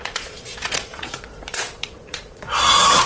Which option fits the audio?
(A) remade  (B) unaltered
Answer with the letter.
A